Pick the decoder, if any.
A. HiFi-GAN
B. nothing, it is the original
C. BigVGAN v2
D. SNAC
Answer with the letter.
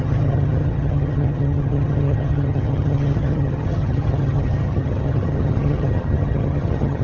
A